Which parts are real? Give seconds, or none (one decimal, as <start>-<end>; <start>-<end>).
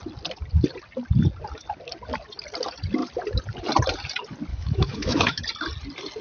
0.0-4.5; 5.4-6.2